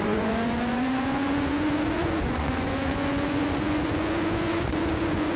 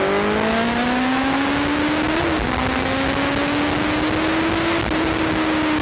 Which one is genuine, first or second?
second